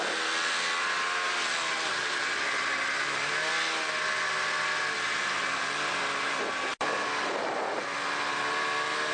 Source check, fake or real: real